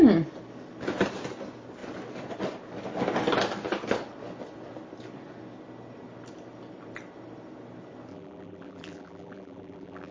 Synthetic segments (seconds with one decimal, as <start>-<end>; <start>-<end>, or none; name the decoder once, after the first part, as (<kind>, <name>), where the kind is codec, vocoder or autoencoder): 8.1-10.1 (vocoder, BigVGAN v2)